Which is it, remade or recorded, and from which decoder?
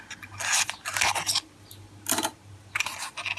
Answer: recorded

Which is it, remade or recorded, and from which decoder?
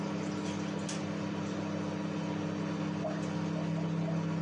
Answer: recorded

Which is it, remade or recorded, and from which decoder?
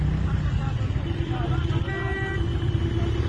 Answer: recorded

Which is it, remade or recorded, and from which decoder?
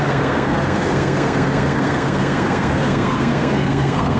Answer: remade, codec, SNAC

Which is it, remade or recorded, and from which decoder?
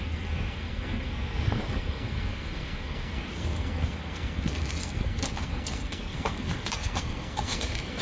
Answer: remade, codec, SNAC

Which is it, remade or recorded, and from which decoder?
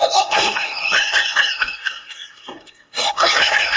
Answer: remade, codec, SNAC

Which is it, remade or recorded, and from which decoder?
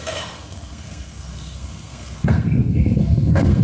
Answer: remade, codec, SNAC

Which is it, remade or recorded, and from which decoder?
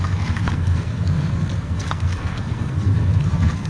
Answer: remade, codec, SNAC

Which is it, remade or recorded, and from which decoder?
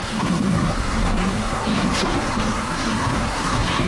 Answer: remade, codec, SNAC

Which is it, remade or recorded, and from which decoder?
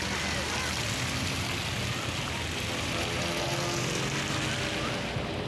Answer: recorded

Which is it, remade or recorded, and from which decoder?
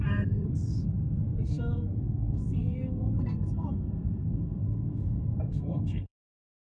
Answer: remade, codec, SNAC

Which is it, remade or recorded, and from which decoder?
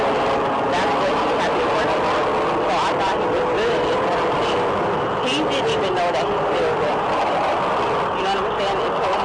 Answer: recorded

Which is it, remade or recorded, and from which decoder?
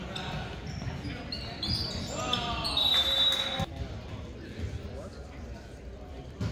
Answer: recorded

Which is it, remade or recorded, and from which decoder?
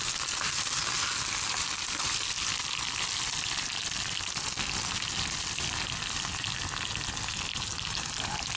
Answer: recorded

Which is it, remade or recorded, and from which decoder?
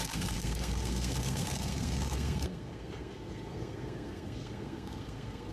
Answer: remade, codec, SNAC